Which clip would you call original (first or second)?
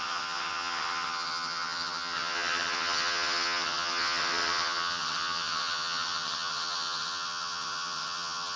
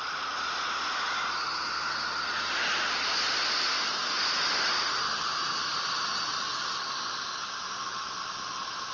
second